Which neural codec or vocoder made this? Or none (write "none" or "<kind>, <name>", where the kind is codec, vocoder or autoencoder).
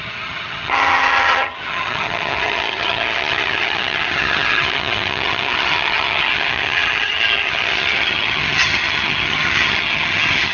vocoder, HiFi-GAN